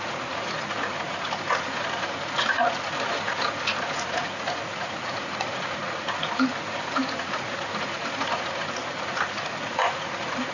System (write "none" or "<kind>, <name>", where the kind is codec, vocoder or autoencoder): vocoder, Vocos